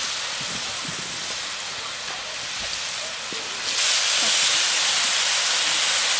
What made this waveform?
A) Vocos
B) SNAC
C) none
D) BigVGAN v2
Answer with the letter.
C